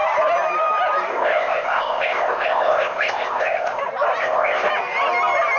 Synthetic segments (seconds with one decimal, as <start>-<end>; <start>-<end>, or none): 1.1-3.8; 4.2-4.7